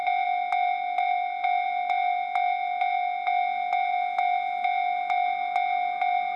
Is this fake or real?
real